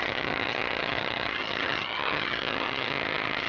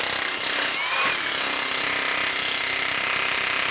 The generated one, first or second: first